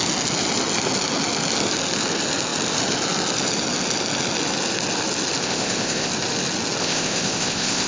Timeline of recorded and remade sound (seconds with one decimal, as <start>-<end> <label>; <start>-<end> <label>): 0.0-5.4 recorded; 5.4-6.1 remade; 6.1-6.8 recorded; 6.8-7.9 remade